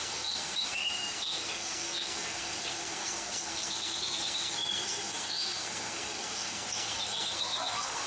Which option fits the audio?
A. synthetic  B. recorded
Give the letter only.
A